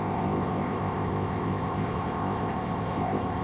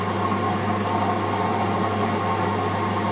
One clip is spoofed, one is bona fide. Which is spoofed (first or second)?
first